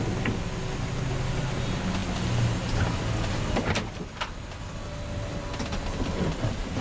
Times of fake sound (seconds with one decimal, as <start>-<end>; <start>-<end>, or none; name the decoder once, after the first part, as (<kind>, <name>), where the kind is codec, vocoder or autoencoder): none